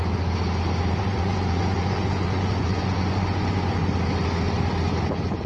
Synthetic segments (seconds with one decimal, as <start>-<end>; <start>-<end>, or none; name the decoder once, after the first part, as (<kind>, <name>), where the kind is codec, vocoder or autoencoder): 1.0-3.9 (vocoder, Vocos)